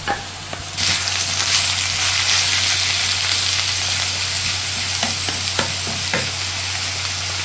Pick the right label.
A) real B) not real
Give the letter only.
A